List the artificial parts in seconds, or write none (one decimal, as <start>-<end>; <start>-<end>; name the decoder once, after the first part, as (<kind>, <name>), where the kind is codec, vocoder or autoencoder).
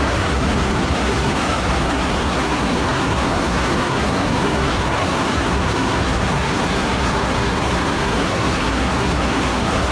0.0-9.9 (codec, SNAC)